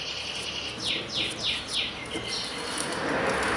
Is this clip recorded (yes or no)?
yes